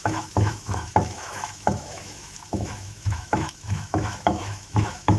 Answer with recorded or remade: remade